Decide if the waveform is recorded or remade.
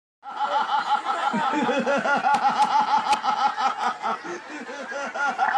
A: recorded